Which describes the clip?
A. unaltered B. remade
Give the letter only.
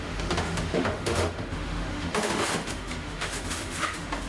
B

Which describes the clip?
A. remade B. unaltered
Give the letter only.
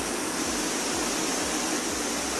B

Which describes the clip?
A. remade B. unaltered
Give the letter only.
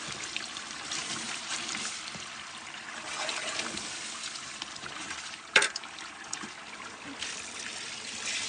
A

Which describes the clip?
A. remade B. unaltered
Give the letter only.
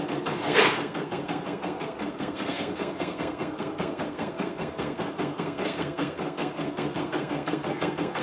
A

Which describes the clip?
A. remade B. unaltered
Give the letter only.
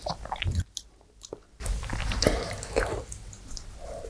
B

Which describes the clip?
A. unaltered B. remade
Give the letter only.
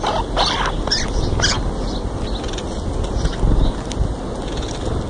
A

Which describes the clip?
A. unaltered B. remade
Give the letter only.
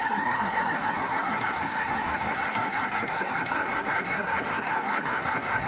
B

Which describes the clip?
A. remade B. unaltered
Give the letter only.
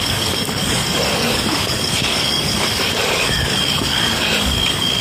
A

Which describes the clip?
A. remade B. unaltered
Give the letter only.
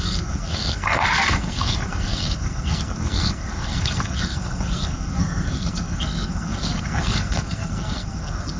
A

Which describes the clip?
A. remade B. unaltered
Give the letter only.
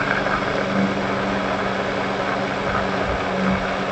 B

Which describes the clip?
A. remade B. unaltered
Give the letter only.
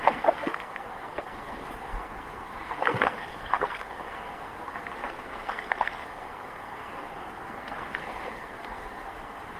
A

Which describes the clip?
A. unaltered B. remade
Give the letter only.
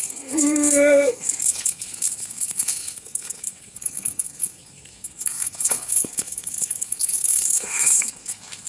B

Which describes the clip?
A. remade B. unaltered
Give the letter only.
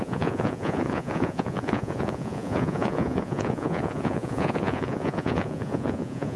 A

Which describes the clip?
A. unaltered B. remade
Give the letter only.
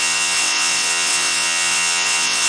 B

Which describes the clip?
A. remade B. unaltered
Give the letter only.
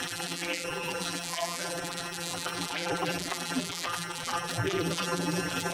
A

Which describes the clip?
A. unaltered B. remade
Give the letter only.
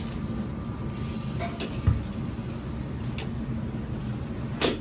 A